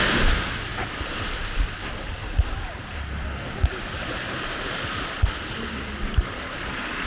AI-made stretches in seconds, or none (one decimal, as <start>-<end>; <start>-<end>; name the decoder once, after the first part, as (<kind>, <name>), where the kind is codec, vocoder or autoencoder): none